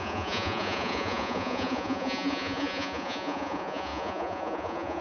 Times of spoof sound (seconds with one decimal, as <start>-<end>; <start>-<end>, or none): 0.0-5.0